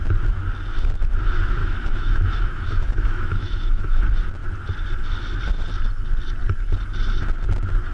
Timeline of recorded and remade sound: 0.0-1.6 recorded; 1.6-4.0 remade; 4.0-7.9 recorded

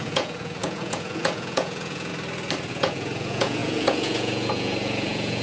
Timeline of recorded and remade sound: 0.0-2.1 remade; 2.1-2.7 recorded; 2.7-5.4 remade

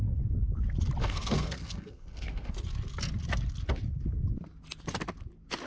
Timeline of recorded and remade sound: 0.0-1.0 recorded; 1.0-2.5 remade; 2.5-5.7 recorded

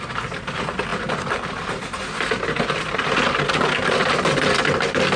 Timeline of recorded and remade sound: 0.0-5.2 recorded

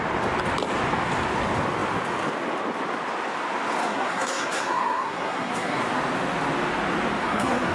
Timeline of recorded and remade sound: 0.0-3.8 recorded; 3.8-5.8 remade; 5.8-7.2 recorded; 7.2-7.7 remade

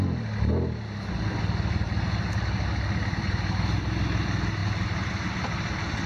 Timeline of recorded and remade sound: 0.0-6.1 recorded

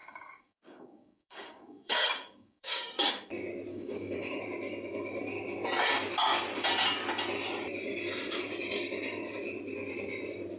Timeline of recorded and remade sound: 0.0-3.1 remade; 3.1-3.7 recorded; 3.7-4.4 remade; 4.4-10.6 recorded